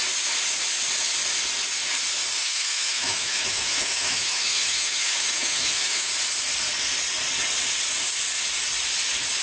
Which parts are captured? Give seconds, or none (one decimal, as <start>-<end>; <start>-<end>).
0.0-2.4; 6.1-9.4

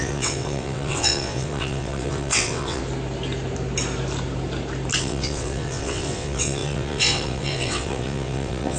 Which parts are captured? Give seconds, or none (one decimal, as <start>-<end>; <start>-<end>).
2.8-5.0

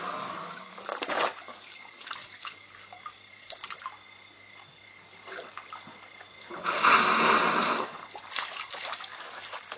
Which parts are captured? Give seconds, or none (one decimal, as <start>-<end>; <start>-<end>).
0.9-1.4; 3.6-8.3

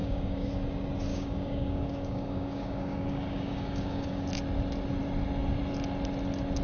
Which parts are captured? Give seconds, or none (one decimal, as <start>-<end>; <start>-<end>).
0.5-1.1; 4.2-6.6

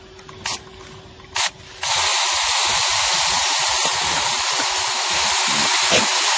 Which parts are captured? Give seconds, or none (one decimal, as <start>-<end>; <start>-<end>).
0.0-6.4

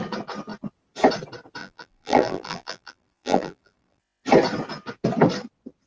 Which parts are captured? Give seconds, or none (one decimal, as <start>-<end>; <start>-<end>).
0.0-1.6; 4.0-5.9

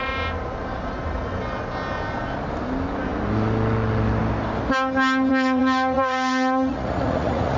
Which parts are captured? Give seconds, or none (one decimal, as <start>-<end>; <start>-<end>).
0.0-5.3